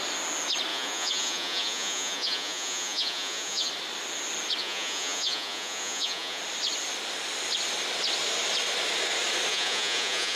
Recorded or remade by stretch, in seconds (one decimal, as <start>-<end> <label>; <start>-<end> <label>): 0.0-0.7 recorded; 0.7-3.7 remade; 3.7-4.6 recorded; 4.6-6.4 remade; 6.4-9.5 recorded; 9.5-10.4 remade